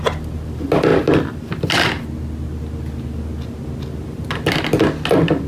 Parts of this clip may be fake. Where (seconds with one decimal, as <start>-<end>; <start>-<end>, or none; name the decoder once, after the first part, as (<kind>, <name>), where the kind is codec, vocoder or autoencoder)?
none